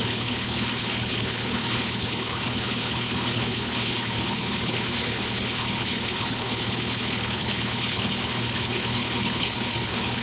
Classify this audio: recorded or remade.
remade